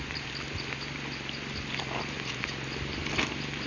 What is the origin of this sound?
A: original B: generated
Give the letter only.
A